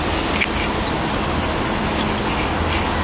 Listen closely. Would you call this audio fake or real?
real